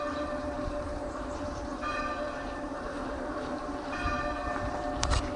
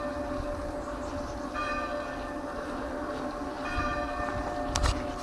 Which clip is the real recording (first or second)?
second